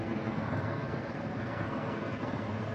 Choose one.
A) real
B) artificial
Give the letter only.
B